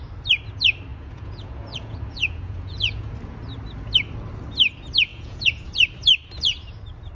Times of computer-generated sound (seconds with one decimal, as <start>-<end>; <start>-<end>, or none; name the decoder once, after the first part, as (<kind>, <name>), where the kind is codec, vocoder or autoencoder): 0.9-3.1 (vocoder, Vocos); 5.1-5.7